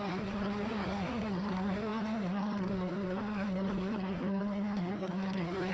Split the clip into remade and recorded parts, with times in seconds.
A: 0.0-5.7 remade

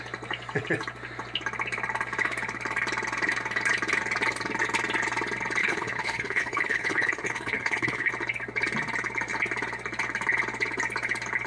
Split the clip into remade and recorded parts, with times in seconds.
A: 0.0-5.6 recorded; 5.6-8.1 remade; 8.1-11.5 recorded

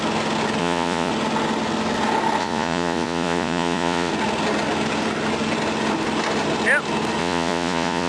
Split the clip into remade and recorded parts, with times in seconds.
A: 0.0-0.6 recorded; 0.6-1.1 remade; 1.1-2.4 recorded; 2.4-4.1 remade; 4.1-7.2 recorded; 7.2-8.1 remade

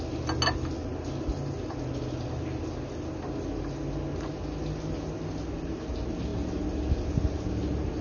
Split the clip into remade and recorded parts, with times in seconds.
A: 0.0-8.0 recorded

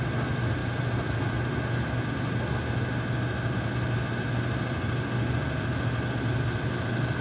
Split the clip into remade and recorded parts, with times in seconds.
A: 0.0-7.2 recorded

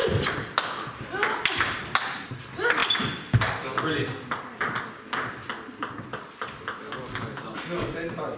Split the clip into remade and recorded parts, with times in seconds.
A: 0.0-8.4 recorded

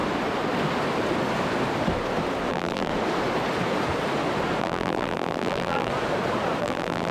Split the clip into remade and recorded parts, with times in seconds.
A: 0.0-2.5 recorded; 2.5-2.9 remade; 2.9-4.6 recorded; 4.6-5.9 remade; 5.9-6.6 recorded; 6.6-7.1 remade